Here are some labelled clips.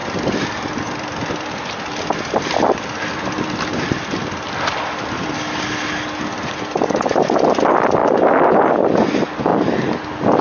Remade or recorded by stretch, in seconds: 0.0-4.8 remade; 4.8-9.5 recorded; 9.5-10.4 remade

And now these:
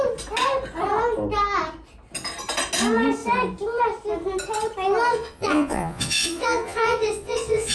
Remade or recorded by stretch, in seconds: 0.0-5.1 recorded; 5.1-7.7 remade

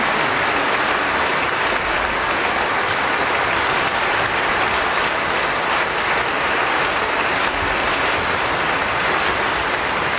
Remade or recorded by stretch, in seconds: 0.0-10.2 recorded

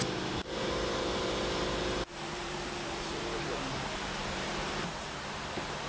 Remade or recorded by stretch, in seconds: 0.0-0.4 recorded; 0.4-1.0 remade; 1.0-2.1 recorded; 2.1-5.9 remade

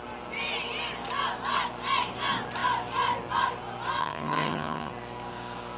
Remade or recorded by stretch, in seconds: 0.0-4.0 recorded; 4.0-4.9 remade; 4.9-5.8 recorded

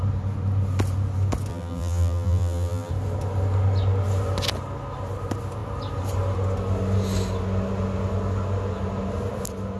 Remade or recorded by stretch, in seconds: 0.0-1.5 recorded; 1.5-2.9 remade; 2.9-9.8 recorded

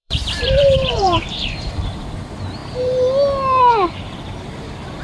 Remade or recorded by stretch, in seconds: 0.0-1.7 remade; 1.7-5.0 recorded